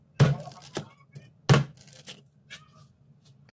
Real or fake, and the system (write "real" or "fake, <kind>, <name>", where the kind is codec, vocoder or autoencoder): real